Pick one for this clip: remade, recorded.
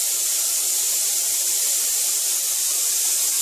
recorded